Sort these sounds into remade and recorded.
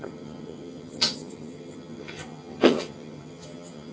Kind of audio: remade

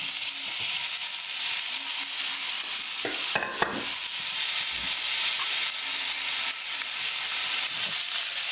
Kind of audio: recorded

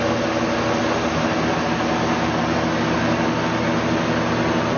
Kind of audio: recorded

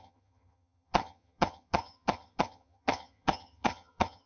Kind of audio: remade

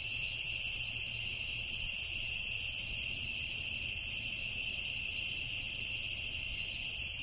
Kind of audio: recorded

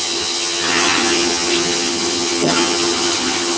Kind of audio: remade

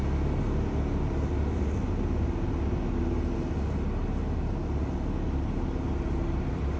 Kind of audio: recorded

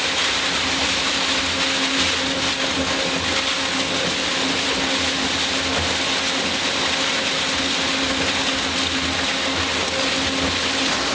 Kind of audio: recorded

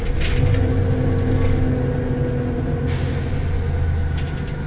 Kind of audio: recorded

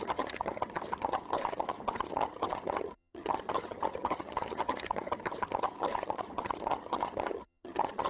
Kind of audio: remade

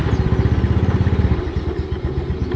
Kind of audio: recorded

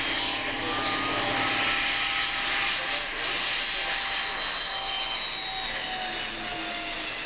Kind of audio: recorded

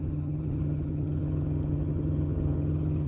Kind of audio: remade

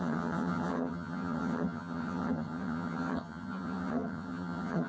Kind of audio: remade